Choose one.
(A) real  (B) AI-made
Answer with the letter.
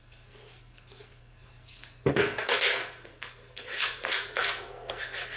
B